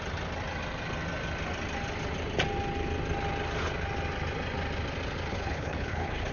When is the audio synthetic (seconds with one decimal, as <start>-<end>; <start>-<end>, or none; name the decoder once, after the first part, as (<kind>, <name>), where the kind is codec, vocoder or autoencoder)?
5.3-6.3 (codec, HILCodec)